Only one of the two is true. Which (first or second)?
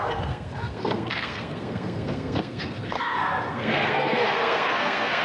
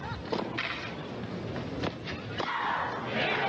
second